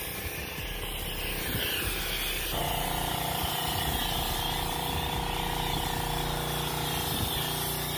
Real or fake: real